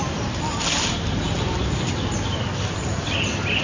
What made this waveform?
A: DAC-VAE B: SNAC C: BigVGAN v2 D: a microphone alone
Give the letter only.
D